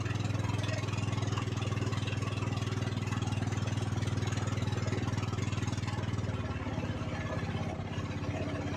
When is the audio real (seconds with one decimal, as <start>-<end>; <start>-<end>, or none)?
0.0-8.8